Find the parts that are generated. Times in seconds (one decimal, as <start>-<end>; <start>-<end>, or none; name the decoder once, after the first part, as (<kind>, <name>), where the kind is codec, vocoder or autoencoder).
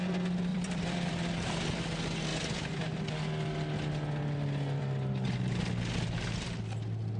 0.5-1.1 (vocoder, BigVGAN v2)